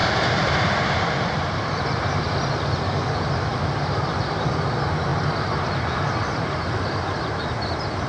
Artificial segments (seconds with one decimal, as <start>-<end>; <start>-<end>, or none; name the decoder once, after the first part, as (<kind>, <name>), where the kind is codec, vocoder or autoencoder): 0.0-2.3 (vocoder, BigVGAN v2); 3.5-4.1; 5.1-7.5